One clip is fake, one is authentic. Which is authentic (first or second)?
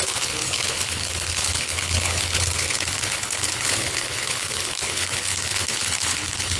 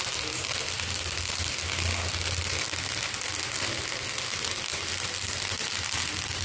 second